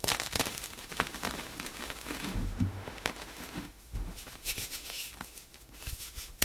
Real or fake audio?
fake